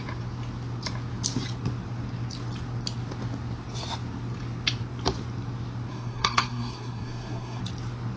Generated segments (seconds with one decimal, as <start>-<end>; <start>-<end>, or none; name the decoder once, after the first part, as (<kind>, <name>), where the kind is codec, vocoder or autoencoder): 5.9-7.6 (codec, SNAC)